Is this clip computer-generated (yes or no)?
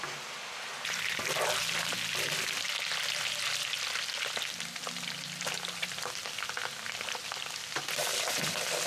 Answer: no